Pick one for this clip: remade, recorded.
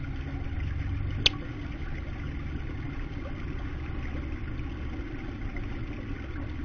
recorded